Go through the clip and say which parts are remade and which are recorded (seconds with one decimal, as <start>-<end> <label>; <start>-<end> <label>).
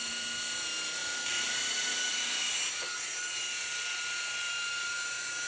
0.0-1.0 recorded; 1.0-1.5 remade; 1.5-5.5 recorded